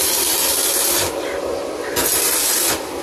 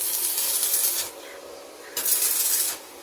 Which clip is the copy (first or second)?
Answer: first